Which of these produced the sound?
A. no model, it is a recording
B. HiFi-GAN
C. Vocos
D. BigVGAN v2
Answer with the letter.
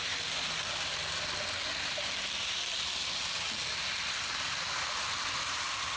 A